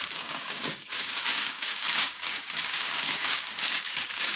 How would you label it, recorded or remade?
remade